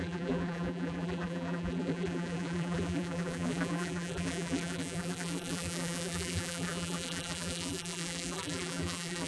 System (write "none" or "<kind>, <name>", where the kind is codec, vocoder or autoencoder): vocoder, BigVGAN v2